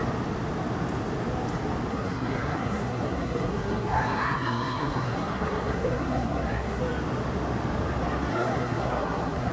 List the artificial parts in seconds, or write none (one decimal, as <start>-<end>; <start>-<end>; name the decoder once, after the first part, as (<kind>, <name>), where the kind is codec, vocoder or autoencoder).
1.9-6.8 (codec, SNAC); 8.3-9.5